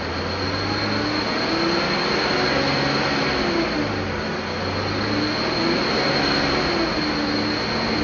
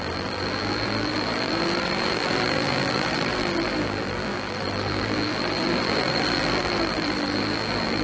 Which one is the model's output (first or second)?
second